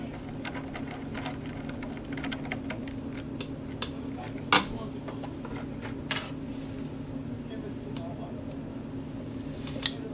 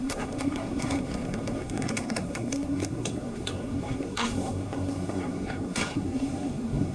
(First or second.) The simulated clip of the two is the second